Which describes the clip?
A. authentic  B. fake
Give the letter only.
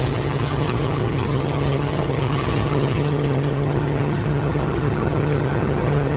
B